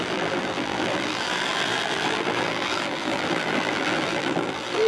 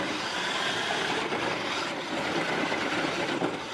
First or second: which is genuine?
second